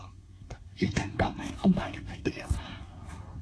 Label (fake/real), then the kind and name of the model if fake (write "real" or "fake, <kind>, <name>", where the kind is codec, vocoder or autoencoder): fake, codec, SNAC